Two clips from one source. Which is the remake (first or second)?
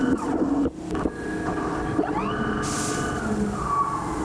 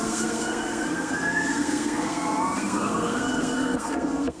second